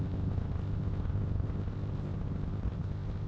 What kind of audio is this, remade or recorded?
remade